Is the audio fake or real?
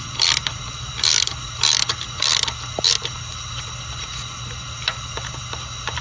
real